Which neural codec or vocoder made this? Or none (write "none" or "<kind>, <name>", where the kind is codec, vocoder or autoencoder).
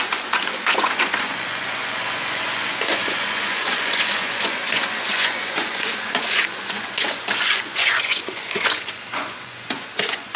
vocoder, Vocos